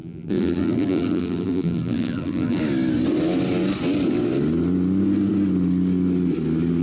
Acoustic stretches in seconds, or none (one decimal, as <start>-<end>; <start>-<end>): 2.6-6.8